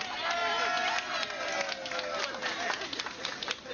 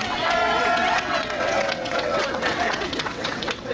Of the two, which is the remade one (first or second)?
second